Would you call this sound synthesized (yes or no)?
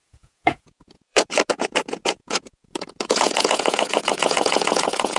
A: yes